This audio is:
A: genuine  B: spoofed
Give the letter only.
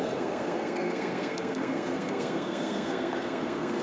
B